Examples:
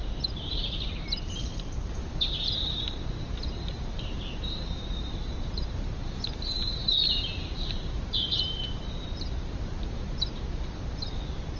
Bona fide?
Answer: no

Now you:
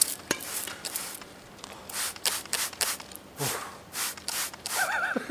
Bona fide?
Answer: no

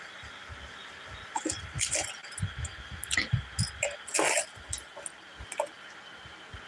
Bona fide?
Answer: yes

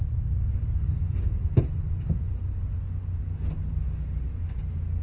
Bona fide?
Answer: yes